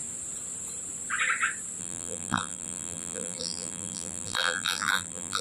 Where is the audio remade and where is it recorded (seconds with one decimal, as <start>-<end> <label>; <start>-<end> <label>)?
0.0-1.8 recorded; 1.8-5.4 remade

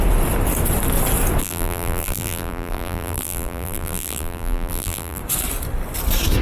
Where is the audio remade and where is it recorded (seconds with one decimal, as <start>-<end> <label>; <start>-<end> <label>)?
0.0-1.4 recorded; 1.4-5.2 remade; 5.2-6.4 recorded